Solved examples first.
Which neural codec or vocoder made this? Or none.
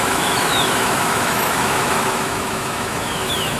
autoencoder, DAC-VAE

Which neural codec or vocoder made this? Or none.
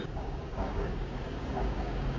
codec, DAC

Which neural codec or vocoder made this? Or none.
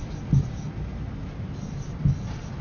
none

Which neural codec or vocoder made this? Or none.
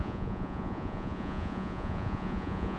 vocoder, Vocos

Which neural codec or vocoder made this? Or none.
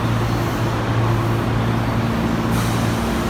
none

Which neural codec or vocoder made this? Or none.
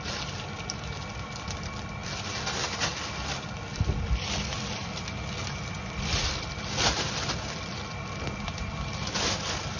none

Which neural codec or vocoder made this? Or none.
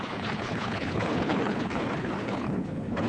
codec, HILCodec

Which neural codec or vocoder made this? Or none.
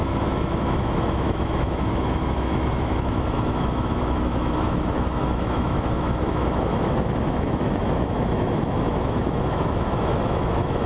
autoencoder, DAC-VAE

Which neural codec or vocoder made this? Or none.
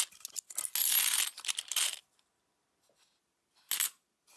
none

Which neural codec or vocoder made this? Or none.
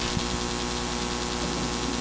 none